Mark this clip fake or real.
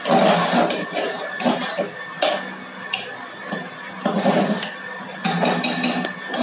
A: real